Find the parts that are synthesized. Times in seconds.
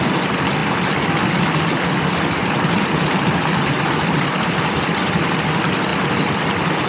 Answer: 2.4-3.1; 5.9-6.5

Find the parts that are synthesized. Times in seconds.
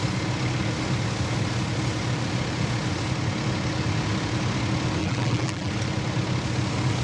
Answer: 5.0-5.7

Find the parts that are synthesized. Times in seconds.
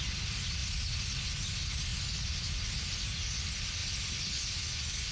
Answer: 0.6-1.1; 3.8-4.5